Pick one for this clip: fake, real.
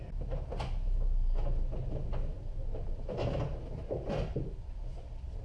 real